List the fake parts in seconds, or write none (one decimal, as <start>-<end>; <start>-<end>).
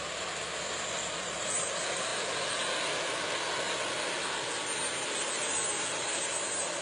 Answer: none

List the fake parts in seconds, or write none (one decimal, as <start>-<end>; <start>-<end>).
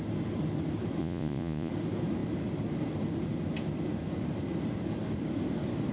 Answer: 1.0-1.7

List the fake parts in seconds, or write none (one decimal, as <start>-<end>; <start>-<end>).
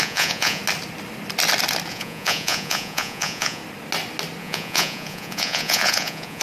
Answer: 0.0-0.6; 1.9-3.6; 4.4-6.4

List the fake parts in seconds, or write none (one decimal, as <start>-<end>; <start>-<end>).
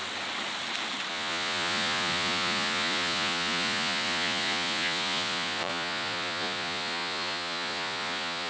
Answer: 1.1-8.5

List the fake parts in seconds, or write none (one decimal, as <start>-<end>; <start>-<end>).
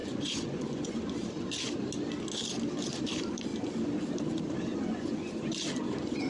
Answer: 0.0-1.0; 4.7-5.3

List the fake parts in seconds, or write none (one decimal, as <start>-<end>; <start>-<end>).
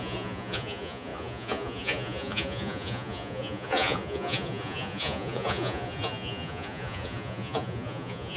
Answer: 0.0-8.4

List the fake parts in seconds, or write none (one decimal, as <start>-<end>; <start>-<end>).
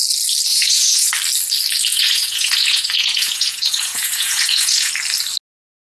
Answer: 0.5-1.1; 1.9-4.9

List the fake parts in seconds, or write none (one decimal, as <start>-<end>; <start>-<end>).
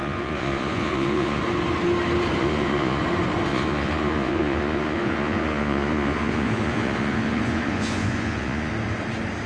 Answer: 0.0-1.4; 2.4-3.0; 3.5-8.7